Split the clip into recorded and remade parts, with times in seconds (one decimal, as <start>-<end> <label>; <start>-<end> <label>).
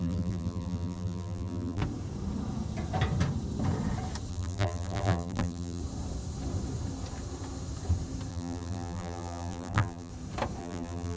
0.0-1.8 remade; 1.8-4.3 recorded; 4.3-5.8 remade; 5.8-8.3 recorded; 8.3-10.1 remade; 10.1-10.6 recorded; 10.6-11.2 remade